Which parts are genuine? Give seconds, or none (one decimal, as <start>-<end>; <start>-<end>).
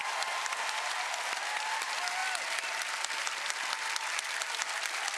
0.0-5.2